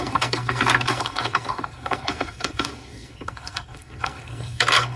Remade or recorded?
remade